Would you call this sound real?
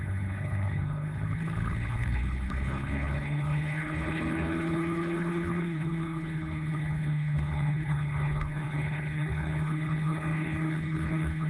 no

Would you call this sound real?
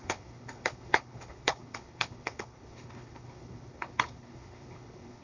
no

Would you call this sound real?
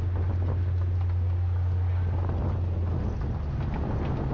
yes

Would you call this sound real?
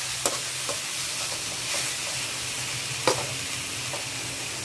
yes